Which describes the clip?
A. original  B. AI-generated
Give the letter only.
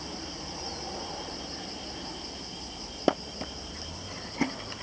B